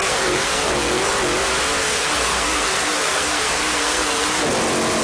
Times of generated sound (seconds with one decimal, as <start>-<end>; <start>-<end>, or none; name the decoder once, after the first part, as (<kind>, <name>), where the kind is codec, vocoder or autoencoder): 0.0-1.1 (codec, SNAC); 1.8-4.4